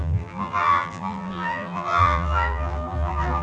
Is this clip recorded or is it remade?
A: remade